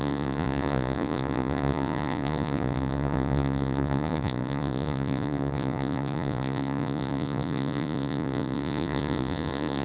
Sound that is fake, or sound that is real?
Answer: fake